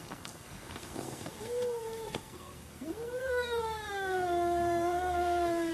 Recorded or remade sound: remade